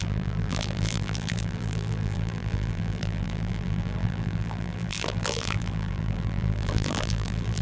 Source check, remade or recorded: remade